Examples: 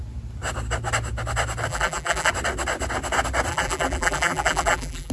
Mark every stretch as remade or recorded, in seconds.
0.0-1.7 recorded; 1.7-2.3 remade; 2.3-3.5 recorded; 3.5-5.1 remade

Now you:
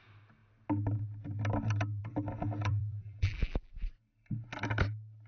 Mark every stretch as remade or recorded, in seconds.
0.0-2.6 recorded; 2.6-3.7 remade; 3.7-5.3 recorded

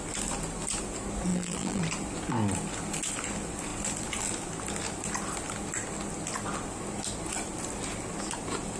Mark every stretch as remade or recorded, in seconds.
0.0-1.3 recorded; 1.3-1.8 remade; 1.8-8.8 recorded

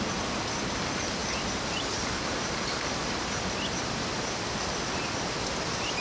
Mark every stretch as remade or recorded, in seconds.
0.0-1.2 recorded; 1.2-2.8 remade; 2.8-6.0 recorded

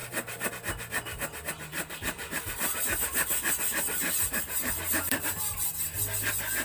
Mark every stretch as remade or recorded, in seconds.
0.0-0.5 remade; 0.5-1.7 recorded; 1.7-5.7 remade; 5.7-6.6 recorded

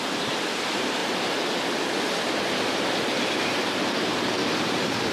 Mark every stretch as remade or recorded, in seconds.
0.0-1.0 remade; 1.0-4.1 recorded; 4.1-5.1 remade